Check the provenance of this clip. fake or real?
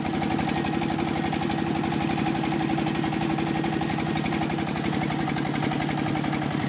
real